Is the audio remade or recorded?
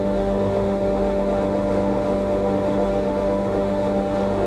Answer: remade